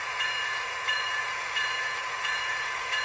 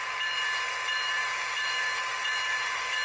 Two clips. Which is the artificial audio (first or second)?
first